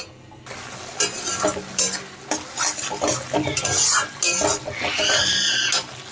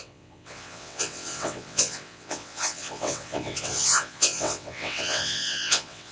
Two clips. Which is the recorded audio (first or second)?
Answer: first